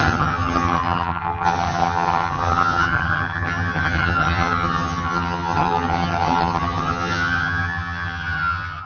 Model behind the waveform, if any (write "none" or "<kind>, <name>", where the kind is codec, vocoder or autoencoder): vocoder, HiFi-GAN